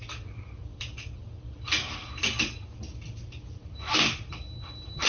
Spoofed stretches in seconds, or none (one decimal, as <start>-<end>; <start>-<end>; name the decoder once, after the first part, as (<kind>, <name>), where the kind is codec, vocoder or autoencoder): none